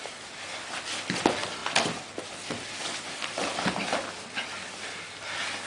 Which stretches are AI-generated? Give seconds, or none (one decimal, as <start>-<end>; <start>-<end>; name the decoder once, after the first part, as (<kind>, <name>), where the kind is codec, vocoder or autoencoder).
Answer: none